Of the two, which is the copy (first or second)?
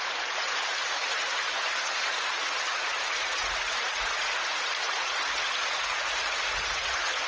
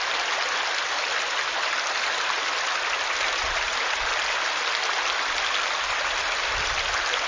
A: first